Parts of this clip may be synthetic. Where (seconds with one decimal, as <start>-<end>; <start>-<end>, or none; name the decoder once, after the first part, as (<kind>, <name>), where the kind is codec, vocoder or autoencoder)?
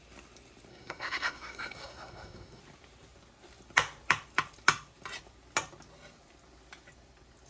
0.7-2.6 (codec, SNAC)